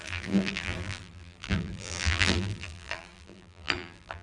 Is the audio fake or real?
fake